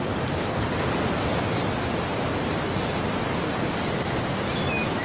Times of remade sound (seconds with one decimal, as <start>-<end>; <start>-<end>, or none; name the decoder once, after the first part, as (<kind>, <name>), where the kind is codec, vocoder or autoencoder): 1.8-3.5 (vocoder, BigVGAN v2)